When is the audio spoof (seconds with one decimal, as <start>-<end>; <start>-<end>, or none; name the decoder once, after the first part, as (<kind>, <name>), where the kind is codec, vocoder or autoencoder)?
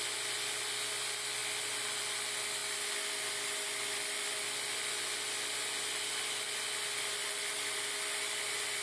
none